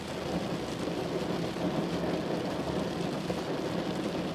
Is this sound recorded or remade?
recorded